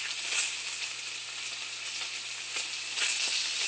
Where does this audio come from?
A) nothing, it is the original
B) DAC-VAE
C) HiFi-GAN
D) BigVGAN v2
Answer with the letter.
A